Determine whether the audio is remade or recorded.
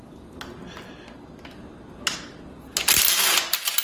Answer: recorded